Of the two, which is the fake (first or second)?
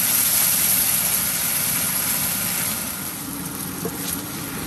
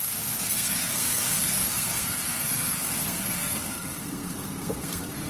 second